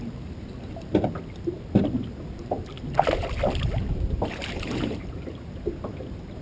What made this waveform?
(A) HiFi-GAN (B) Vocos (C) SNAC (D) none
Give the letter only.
D